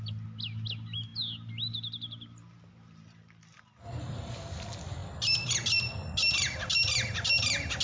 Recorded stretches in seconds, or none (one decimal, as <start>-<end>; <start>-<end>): 0.0-7.8